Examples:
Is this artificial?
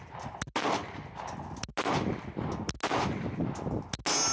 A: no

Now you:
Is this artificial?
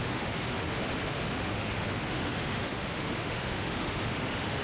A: yes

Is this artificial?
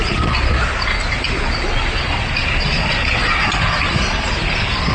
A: no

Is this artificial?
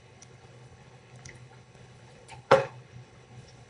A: yes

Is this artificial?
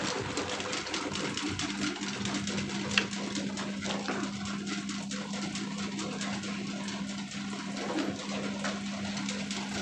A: no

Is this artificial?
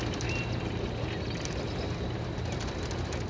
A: no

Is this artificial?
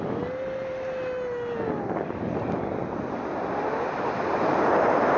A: no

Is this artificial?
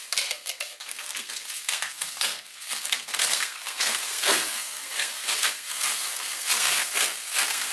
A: yes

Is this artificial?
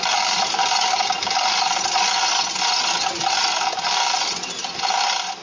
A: no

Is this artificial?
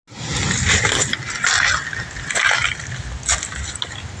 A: no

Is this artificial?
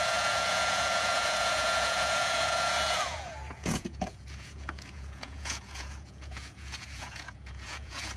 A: yes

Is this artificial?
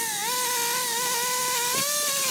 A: no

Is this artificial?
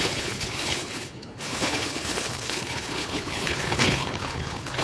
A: yes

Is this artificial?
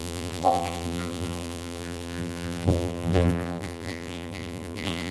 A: yes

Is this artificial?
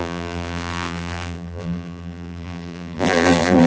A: yes